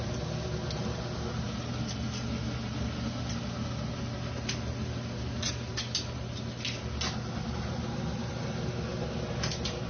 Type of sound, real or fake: real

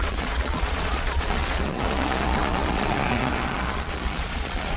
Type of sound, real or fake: fake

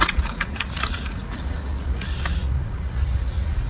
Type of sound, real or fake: fake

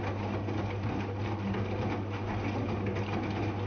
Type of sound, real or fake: real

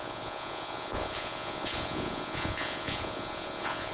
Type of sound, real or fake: fake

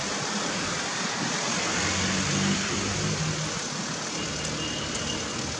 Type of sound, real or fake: real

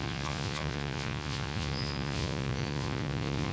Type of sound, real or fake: fake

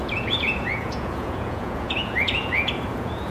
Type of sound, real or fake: fake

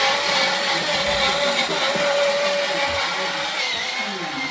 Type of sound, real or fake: real